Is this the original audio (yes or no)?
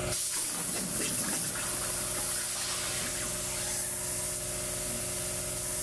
yes